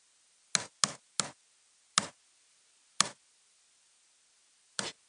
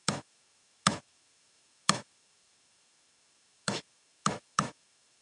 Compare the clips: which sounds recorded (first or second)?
first